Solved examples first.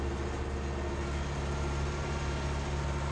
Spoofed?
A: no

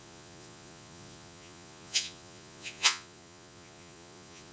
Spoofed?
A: yes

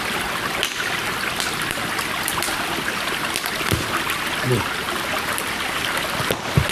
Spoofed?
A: no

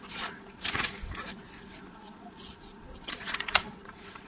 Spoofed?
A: yes